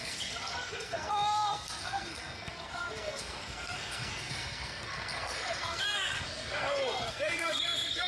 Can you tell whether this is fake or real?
fake